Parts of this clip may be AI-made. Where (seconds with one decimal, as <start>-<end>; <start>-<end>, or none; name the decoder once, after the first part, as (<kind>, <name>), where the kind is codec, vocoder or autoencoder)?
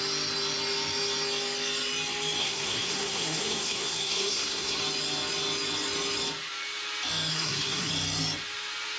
2.4-4.8 (codec, SNAC); 7.3-7.9